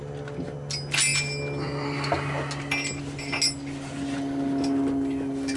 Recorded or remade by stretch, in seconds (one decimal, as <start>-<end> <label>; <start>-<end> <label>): 0.0-5.6 recorded